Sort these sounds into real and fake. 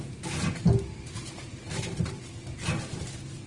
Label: real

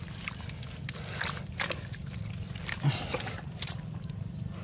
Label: real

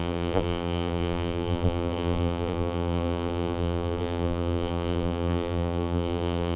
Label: fake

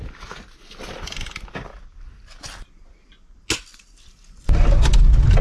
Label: real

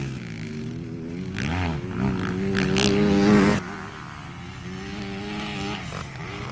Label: real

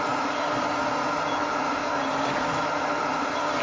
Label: real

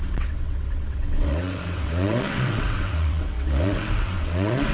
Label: fake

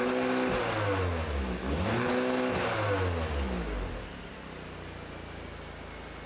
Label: real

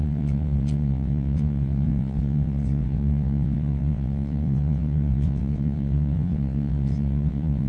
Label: fake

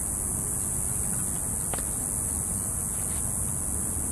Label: real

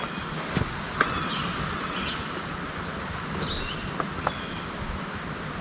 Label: real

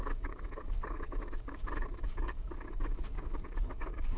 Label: fake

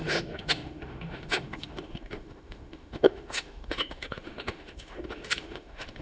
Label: fake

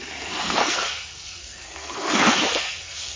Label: fake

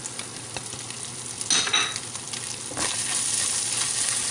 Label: real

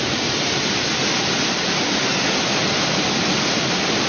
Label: real